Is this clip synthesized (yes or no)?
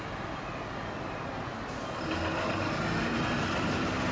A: no